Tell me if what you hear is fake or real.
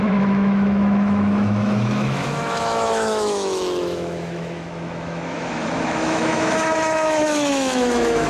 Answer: fake